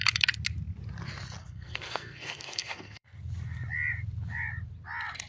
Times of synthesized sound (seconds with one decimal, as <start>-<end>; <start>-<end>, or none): 1.4-3.2